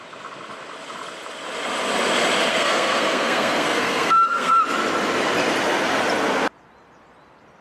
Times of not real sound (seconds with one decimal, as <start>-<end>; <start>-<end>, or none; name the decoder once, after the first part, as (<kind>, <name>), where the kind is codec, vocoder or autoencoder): 2.5-4.6 (codec, SNAC)